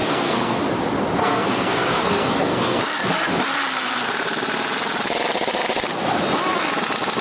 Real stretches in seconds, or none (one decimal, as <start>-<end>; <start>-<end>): 0.6-1.2; 2.8-7.2